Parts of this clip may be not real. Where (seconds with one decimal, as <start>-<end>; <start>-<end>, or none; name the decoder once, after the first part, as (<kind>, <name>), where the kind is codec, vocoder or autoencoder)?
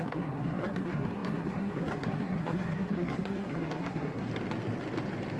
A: 0.0-4.3 (codec, SNAC)